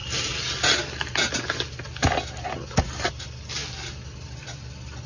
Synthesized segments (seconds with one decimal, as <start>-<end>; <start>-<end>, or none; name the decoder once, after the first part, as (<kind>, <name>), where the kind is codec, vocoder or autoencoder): none